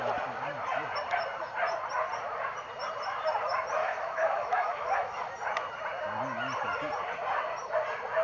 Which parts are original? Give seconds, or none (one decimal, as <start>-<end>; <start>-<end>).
0.0-3.8; 5.2-8.2